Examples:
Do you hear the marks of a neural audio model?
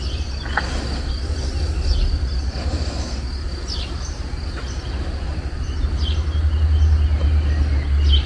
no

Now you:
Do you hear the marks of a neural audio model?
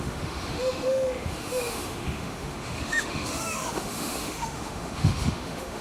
yes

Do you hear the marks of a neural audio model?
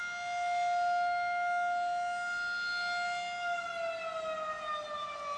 no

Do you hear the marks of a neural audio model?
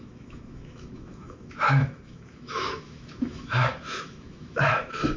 yes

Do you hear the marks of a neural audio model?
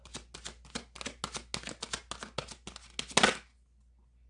no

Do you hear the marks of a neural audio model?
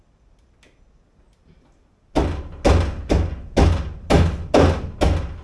no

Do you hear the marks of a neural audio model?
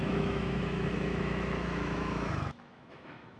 yes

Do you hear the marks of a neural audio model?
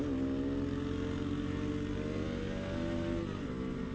no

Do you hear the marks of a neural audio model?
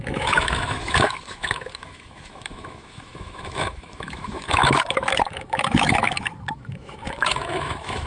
yes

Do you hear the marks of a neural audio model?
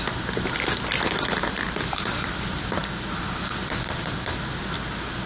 no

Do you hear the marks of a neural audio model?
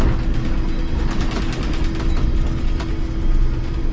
no